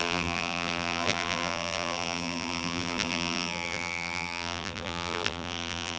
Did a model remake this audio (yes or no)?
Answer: yes